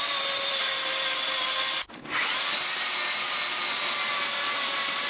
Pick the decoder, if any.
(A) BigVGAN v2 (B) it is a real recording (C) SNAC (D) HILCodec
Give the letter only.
B